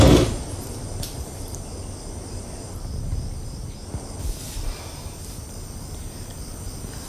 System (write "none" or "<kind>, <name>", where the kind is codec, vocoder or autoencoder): none